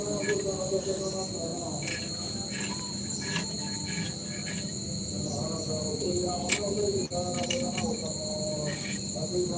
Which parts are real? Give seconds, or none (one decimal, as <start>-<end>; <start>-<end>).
0.0-9.6